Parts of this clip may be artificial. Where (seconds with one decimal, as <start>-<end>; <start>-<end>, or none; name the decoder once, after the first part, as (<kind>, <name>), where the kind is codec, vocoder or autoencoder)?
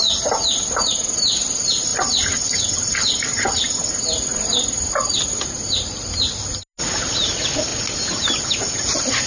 none